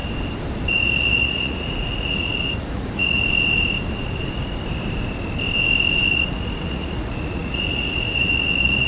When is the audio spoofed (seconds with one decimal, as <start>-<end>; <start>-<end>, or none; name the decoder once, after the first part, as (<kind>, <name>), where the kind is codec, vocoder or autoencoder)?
0.7-3.2 (vocoder, Vocos); 6.1-8.9